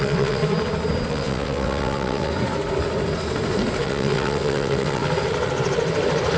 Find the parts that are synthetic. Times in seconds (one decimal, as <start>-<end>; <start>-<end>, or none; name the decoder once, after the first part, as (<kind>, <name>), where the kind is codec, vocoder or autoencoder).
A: 0.0-0.4 (vocoder, WaveNeXt); 1.1-2.3; 3.8-5.0